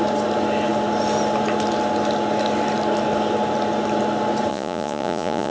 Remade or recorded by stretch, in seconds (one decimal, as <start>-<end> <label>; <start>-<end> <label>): 0.0-4.5 recorded; 4.5-5.5 remade